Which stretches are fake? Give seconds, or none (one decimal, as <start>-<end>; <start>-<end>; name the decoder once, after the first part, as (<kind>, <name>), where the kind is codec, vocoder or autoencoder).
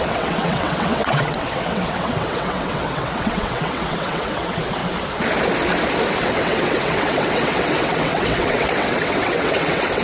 0.0-4.8 (vocoder, WaveNeXt); 6.2-10.0